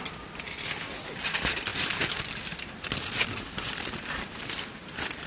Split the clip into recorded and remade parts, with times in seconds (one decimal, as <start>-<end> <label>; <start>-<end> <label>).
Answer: 0.0-5.3 recorded